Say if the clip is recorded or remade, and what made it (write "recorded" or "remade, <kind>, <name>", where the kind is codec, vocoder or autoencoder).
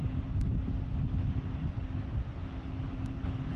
recorded